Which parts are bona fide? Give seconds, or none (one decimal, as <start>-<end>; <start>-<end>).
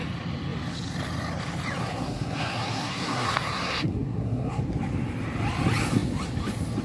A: 0.0-1.8; 4.6-6.8